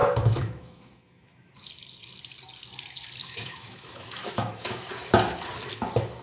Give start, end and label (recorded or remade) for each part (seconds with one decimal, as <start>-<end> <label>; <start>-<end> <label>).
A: 0.0-1.5 remade; 1.5-3.2 recorded; 3.2-4.9 remade; 4.9-6.2 recorded